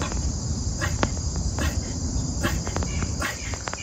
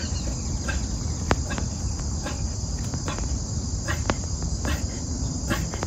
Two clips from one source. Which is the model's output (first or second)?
first